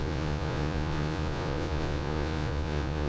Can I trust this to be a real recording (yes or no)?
no